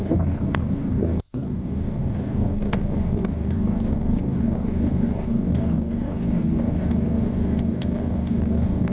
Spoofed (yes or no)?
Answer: yes